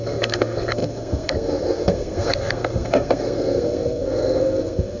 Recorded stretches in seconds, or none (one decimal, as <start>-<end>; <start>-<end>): none

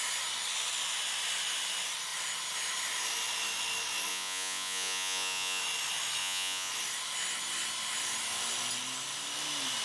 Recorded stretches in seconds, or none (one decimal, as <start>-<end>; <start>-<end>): 0.0-4.1; 5.6-6.2; 6.7-9.8